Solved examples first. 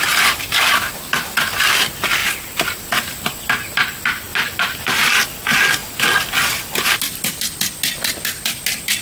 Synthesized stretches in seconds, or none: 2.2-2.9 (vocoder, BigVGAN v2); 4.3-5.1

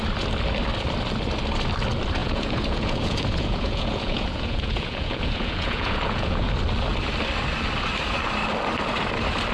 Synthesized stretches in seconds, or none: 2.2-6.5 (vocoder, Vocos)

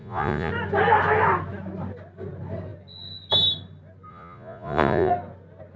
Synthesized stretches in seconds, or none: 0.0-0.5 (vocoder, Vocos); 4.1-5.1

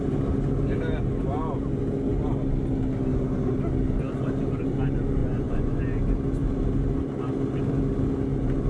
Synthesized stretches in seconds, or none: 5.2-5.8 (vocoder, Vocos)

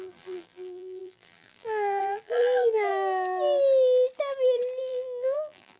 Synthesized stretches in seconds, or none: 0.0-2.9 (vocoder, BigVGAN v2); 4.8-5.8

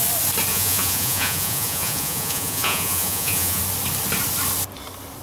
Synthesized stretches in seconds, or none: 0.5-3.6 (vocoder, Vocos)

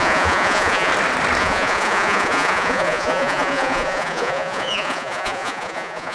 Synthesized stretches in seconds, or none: 0.0-0.9 (vocoder, Vocos); 1.4-6.1